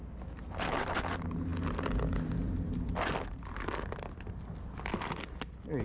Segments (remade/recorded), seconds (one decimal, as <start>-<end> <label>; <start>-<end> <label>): 0.0-5.8 recorded